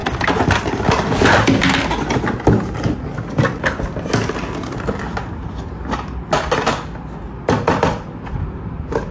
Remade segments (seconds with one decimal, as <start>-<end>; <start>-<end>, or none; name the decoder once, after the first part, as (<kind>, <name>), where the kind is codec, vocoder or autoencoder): none